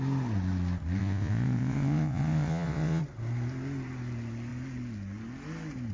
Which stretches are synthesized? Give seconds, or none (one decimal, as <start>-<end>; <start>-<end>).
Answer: 1.0-3.0